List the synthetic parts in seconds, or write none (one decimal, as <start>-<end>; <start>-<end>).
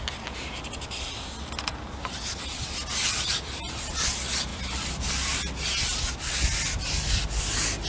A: none